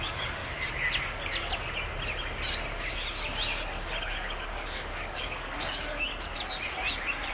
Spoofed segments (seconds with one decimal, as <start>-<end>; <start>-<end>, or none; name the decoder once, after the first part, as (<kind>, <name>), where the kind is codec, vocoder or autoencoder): 0.0-0.4 (codec, DAC); 4.0-6.1